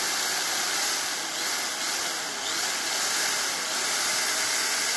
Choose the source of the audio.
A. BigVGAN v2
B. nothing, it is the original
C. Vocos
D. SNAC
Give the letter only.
B